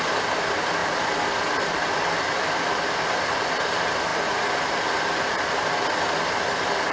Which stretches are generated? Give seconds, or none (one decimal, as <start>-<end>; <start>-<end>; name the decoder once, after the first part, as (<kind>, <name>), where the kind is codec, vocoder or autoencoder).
0.8-3.6 (vocoder, BigVGAN v2)